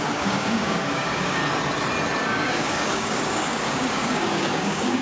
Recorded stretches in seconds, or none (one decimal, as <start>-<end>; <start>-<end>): 1.4-2.2